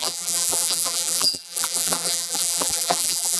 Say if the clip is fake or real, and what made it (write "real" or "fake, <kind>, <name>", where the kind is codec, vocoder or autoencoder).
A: fake, vocoder, BigVGAN v2